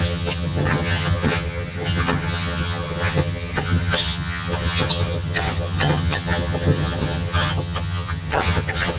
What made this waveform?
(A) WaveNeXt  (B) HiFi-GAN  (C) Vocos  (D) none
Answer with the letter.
B